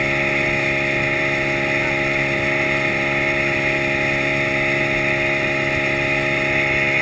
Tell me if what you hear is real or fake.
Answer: real